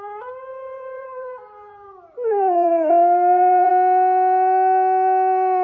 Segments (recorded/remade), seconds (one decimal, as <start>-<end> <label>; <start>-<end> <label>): 0.0-0.6 recorded; 0.6-3.7 remade; 3.7-5.6 recorded